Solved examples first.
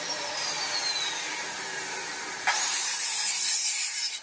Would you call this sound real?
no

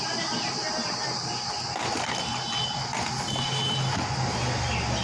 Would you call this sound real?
yes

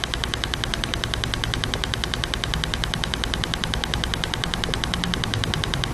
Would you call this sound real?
yes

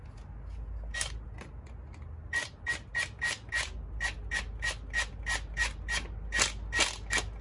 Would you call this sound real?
yes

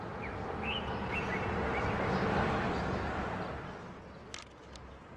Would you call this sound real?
yes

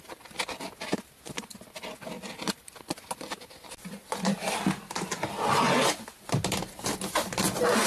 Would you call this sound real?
yes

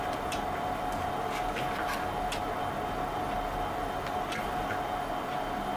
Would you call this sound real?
yes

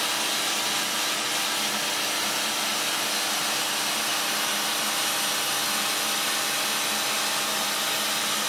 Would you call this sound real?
yes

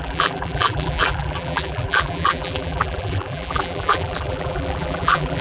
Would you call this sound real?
no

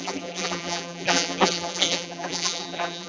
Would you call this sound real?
no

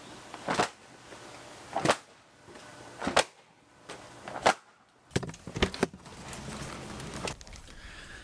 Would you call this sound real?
yes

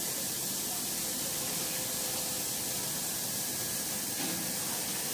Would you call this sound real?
yes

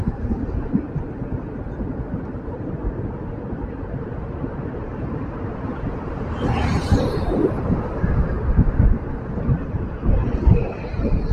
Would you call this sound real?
yes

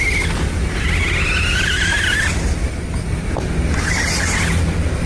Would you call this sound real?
yes